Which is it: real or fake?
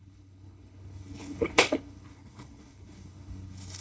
fake